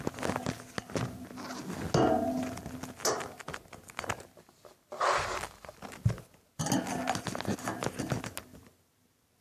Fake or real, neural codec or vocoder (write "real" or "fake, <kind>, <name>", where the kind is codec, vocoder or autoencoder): real